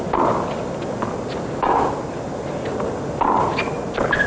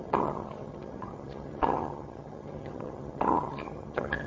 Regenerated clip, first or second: second